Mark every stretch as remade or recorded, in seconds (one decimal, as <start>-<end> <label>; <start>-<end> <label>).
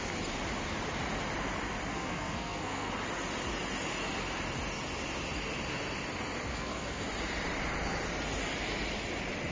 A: 0.0-1.9 recorded; 1.9-2.9 remade; 2.9-6.5 recorded; 6.5-7.0 remade; 7.0-9.5 recorded